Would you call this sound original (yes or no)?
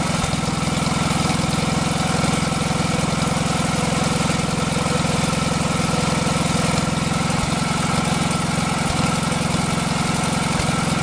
yes